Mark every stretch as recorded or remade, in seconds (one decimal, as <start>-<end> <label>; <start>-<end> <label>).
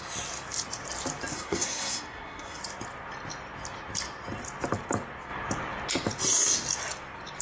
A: 0.0-1.3 recorded; 1.3-2.6 remade; 2.6-7.4 recorded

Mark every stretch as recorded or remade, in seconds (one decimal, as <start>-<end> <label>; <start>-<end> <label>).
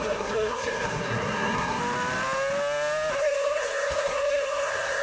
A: 0.0-1.8 remade; 1.8-3.2 recorded; 3.2-5.0 remade